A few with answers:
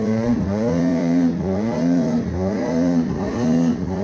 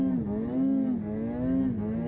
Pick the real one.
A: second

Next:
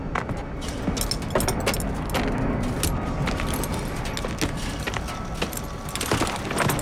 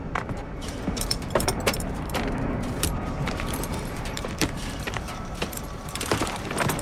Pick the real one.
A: first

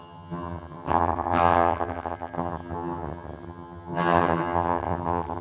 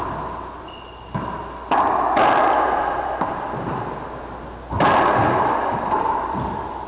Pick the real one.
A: second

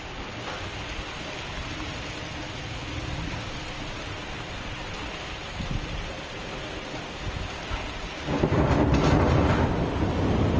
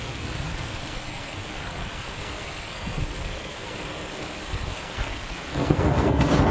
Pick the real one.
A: first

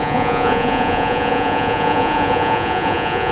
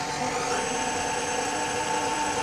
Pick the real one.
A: second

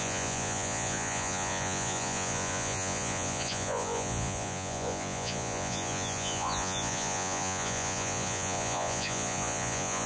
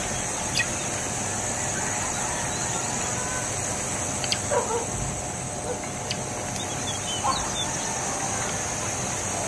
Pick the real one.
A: second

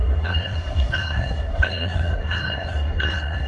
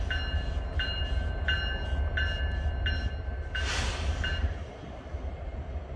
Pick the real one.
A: second